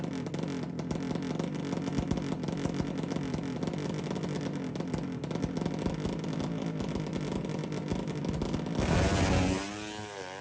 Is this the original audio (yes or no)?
yes